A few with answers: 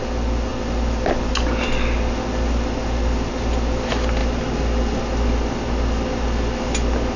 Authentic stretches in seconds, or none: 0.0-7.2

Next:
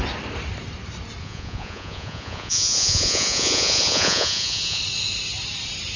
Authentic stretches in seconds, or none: 0.0-1.2; 4.8-6.0

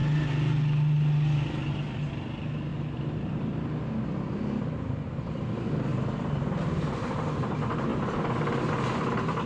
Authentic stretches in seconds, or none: 0.0-2.1; 5.9-7.1; 7.9-8.7

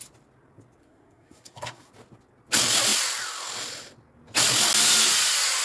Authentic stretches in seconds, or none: 0.0-0.8; 1.9-5.6

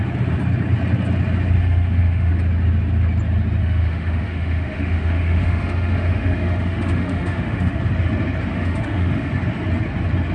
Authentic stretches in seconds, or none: 0.0-1.6; 2.3-3.6; 7.8-8.5; 9.3-10.3

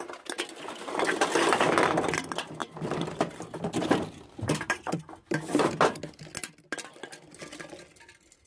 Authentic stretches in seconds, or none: 0.0-2.6; 5.0-8.5

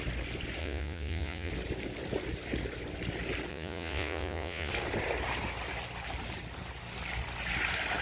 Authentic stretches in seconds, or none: 0.0-0.6; 1.5-3.5; 4.7-8.0